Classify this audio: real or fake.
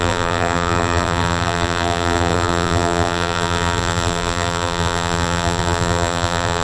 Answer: fake